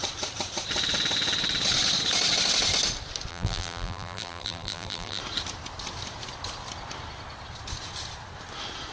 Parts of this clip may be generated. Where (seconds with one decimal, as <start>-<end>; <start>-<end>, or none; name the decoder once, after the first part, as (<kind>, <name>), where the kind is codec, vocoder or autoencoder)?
3.3-5.2 (vocoder, BigVGAN v2)